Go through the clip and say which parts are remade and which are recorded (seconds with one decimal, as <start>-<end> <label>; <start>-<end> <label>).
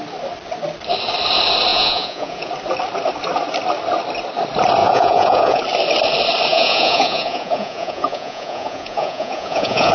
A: 0.0-1.7 recorded; 1.7-2.5 remade; 2.5-4.8 recorded; 4.8-5.6 remade; 5.6-6.5 recorded; 6.5-9.9 remade